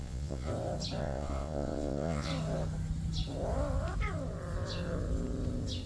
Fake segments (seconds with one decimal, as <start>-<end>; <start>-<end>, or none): 0.0-0.5; 1.0-2.3